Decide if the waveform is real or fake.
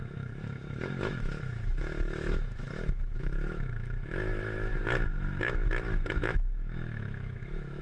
fake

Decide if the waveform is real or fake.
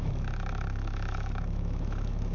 fake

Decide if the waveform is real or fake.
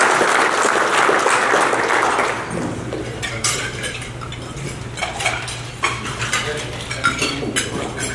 real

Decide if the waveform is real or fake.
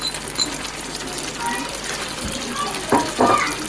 real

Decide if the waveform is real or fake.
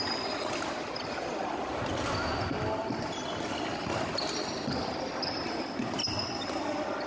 real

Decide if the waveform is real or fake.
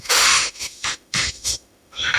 fake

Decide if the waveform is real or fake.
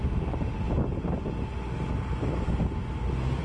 real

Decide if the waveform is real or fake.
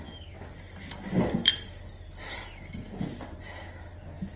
real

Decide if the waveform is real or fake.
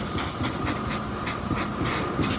real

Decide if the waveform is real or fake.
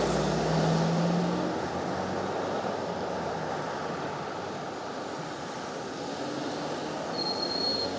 real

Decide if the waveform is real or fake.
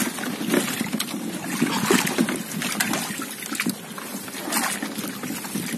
real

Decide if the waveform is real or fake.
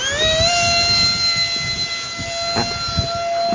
real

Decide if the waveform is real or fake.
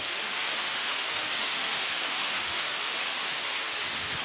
fake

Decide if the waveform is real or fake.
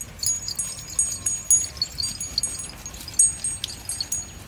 real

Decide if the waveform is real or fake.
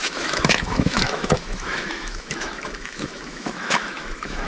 fake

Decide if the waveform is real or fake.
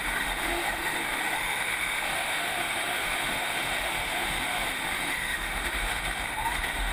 fake